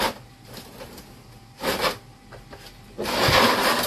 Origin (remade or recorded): recorded